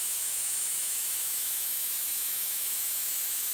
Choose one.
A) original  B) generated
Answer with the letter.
B